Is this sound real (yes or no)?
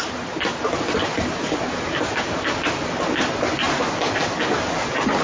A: yes